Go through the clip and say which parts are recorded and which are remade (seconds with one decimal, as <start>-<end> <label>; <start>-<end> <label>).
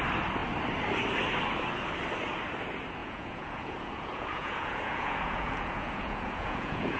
0.0-3.0 recorded; 3.0-7.0 remade